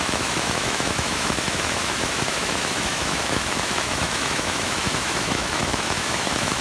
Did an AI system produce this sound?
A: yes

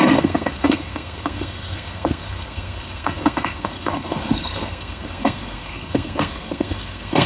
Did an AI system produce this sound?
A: yes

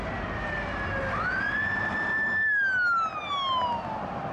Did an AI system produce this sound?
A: no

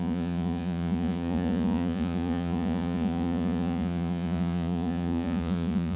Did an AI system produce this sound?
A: yes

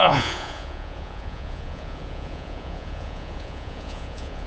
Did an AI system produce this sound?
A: yes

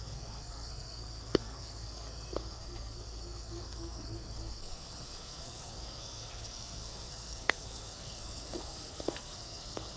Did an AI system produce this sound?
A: yes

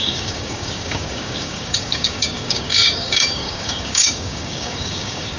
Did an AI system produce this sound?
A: yes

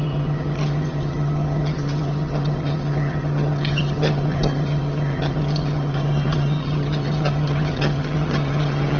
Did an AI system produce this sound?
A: yes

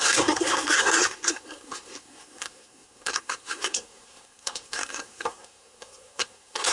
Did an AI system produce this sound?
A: yes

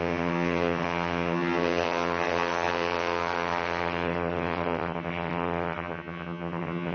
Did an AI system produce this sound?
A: yes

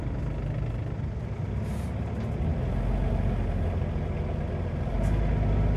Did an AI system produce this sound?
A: no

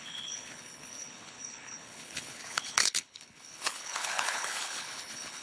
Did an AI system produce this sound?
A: yes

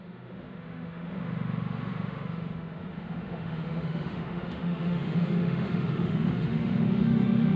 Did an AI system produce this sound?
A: yes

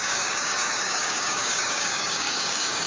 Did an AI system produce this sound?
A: yes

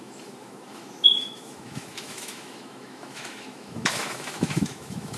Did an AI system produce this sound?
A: yes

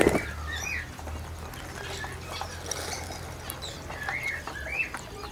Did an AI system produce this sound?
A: no